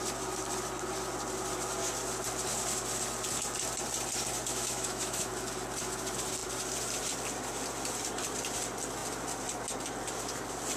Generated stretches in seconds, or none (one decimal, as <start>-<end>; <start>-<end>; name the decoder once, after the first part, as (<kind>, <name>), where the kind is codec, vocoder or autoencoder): 4.5-5.3 (autoencoder, DAC-VAE)